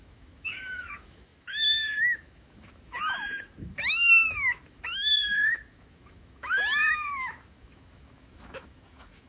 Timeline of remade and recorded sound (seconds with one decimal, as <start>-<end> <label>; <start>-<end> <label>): 0.0-9.3 remade